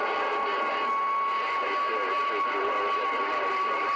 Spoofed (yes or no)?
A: no